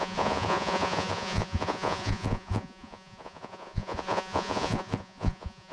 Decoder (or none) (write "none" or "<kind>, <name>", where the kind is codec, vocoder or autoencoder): vocoder, Vocos